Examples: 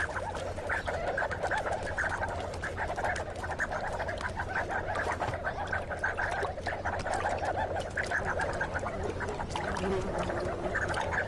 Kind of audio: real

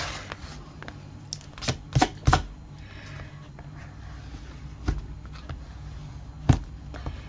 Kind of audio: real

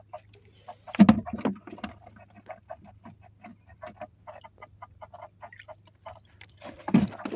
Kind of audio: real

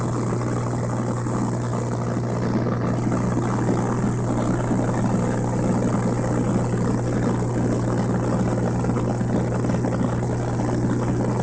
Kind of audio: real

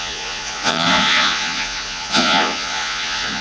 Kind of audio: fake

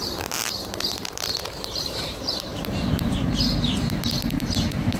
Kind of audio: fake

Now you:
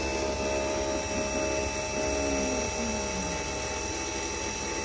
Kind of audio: real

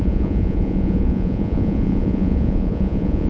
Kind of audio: fake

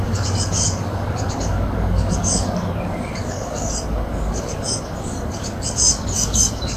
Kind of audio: fake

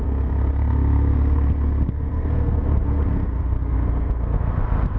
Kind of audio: fake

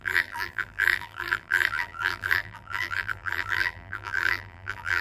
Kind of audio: fake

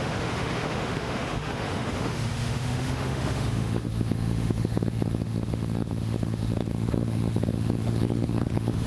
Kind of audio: fake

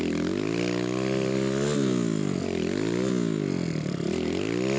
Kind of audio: real